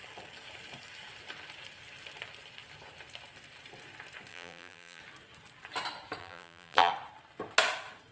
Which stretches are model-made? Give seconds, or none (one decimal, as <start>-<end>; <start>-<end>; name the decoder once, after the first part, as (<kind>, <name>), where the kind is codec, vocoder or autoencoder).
4.3-5.0 (vocoder, BigVGAN v2); 6.2-6.9